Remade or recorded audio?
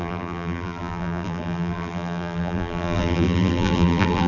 remade